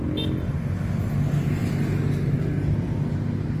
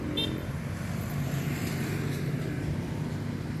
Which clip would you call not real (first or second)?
second